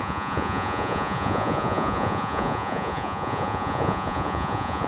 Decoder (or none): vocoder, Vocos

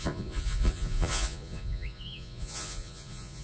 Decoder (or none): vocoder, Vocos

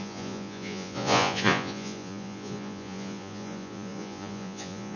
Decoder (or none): vocoder, Vocos